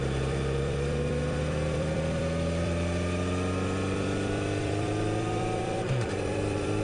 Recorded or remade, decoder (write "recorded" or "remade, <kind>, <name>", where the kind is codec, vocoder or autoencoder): remade, vocoder, BigVGAN v2